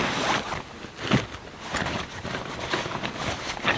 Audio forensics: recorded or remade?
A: recorded